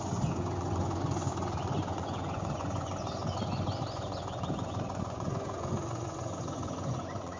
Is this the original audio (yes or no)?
no